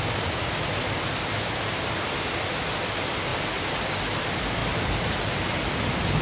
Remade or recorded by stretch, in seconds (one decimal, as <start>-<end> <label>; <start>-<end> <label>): 0.0-4.6 recorded; 4.6-5.6 remade; 5.6-6.2 recorded